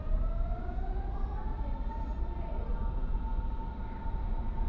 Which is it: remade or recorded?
recorded